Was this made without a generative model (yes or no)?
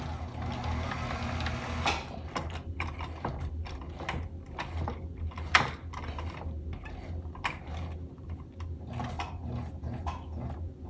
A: yes